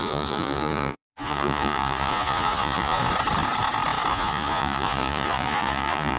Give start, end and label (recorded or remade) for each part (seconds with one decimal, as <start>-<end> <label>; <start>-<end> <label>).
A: 0.0-3.0 remade; 3.0-4.1 recorded; 4.1-6.2 remade